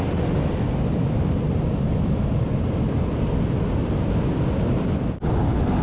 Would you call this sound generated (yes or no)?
no